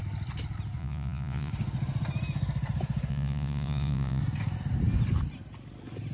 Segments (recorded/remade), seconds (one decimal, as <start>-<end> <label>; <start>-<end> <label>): 0.0-0.8 recorded; 0.8-1.5 remade; 1.5-3.1 recorded; 3.1-4.2 remade; 4.2-6.1 recorded